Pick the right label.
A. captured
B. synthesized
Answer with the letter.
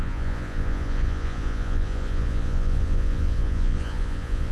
B